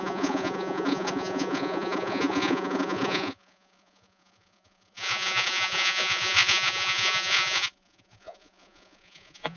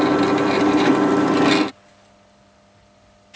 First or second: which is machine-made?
first